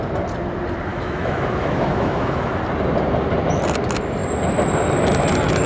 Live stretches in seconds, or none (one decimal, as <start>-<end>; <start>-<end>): 0.0-0.9; 2.6-5.7